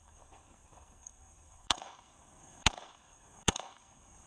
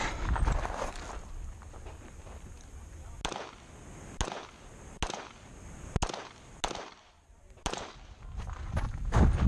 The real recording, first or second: second